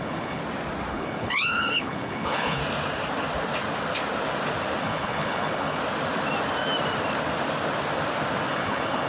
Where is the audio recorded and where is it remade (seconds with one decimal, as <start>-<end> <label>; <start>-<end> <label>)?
0.0-0.4 remade; 0.4-0.9 recorded; 0.9-2.6 remade; 2.6-4.8 recorded; 4.8-5.8 remade; 5.8-8.5 recorded; 8.5-9.1 remade